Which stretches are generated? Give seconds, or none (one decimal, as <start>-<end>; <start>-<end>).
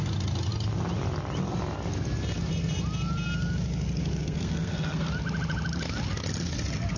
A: 4.0-5.1